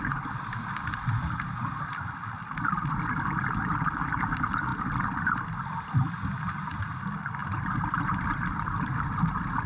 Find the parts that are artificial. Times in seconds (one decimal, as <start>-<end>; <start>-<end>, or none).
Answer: 7.4-8.8